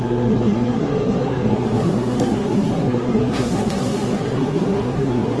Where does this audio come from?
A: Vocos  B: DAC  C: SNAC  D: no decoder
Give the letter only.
C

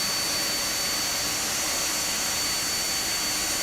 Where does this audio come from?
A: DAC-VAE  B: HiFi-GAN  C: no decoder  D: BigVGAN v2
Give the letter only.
C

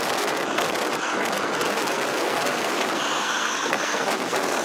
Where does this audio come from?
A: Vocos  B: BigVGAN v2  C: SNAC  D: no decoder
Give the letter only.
C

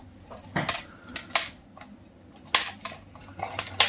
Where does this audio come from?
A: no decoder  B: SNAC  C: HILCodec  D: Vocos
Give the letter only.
A